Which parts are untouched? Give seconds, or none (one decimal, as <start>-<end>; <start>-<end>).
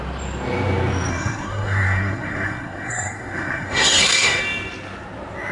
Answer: 0.0-1.1; 4.4-5.5